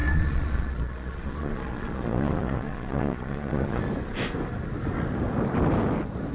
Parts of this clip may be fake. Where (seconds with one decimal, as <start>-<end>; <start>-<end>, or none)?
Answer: 0.0-3.8